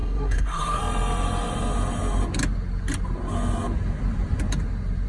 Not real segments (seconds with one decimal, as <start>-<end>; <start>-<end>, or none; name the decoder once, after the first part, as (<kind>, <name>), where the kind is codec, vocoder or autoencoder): 0.0-0.8 (codec, SNAC)